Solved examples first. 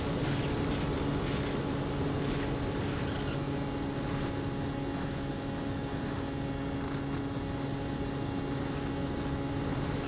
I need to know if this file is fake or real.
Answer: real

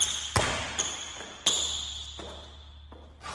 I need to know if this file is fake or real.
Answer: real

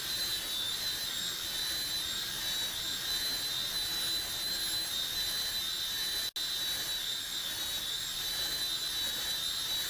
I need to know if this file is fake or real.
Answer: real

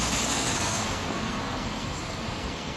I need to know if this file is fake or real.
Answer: fake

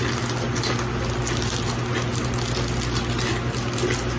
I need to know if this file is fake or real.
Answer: real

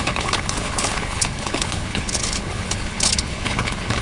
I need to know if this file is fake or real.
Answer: fake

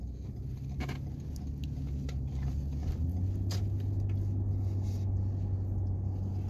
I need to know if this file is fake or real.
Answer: real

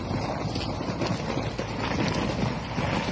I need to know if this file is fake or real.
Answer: real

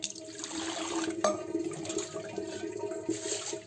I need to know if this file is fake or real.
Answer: real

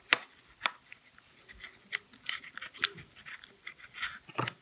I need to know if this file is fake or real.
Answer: real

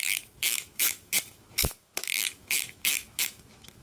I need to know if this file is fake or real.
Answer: fake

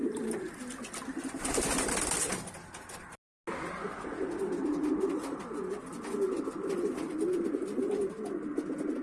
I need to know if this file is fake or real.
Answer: real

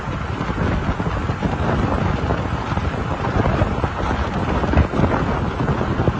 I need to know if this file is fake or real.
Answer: real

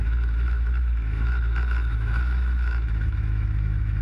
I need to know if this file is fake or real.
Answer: fake